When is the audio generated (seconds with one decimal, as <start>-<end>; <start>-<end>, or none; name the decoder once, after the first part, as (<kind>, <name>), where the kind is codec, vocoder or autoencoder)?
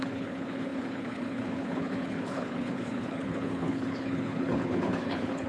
0.0-5.5 (codec, HILCodec)